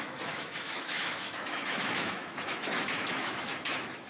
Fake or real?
fake